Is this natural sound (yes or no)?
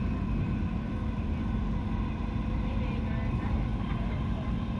no